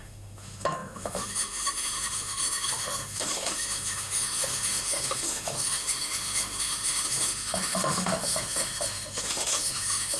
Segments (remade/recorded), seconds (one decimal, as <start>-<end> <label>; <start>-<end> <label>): 0.0-10.2 remade